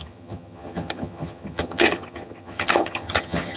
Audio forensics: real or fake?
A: fake